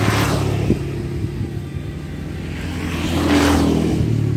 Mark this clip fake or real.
real